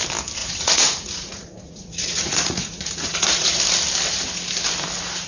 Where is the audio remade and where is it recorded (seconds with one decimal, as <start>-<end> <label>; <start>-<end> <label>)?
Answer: 0.0-0.4 recorded; 0.4-3.6 remade; 3.6-5.3 recorded